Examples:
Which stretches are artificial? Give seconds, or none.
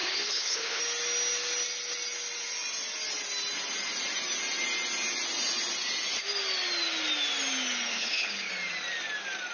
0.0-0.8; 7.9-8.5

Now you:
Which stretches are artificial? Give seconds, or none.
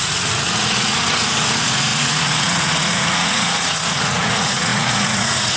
0.0-5.6